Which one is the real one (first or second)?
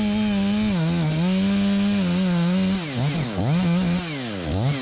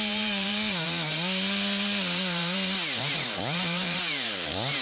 first